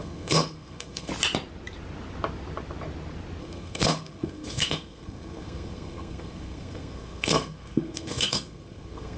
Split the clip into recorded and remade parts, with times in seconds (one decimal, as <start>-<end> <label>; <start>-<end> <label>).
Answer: 0.0-1.1 remade; 1.1-3.4 recorded; 3.4-9.2 remade